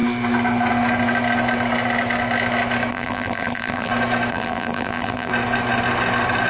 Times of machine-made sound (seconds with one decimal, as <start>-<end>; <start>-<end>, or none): 2.9-3.9; 4.3-5.3